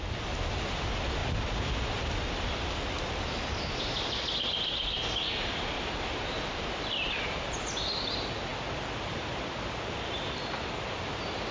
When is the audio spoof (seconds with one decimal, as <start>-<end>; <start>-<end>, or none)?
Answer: none